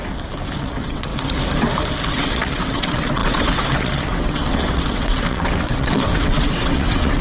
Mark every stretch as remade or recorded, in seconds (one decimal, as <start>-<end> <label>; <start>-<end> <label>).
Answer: 0.0-0.6 recorded; 0.6-1.1 remade; 1.1-2.1 recorded; 2.1-7.2 remade